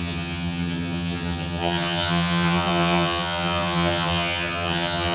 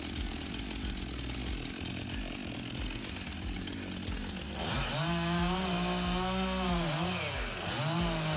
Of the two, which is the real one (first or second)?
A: second